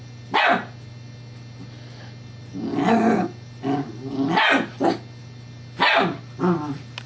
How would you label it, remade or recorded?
recorded